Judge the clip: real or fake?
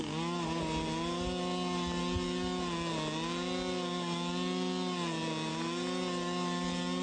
real